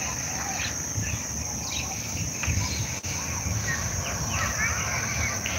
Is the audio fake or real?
real